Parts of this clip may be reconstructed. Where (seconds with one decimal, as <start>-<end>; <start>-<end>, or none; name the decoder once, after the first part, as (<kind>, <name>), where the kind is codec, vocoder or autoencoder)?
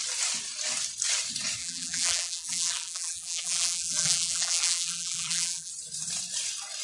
1.6-5.7 (vocoder, BigVGAN v2)